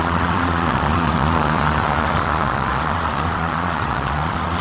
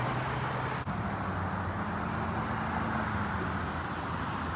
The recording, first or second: second